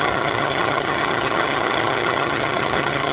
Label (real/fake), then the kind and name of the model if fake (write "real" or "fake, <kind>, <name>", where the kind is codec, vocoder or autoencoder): fake, vocoder, HiFi-GAN